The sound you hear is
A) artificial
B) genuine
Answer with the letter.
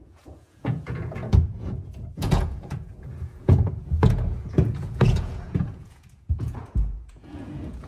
A